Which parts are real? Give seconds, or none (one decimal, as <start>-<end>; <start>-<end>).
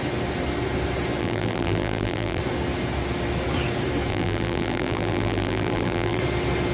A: 0.0-1.2; 2.4-4.1; 6.2-6.7